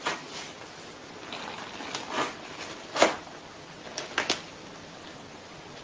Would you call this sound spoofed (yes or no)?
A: no